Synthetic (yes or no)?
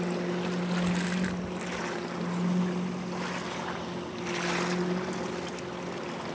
no